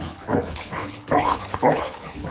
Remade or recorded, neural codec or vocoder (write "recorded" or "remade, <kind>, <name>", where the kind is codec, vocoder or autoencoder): remade, codec, HILCodec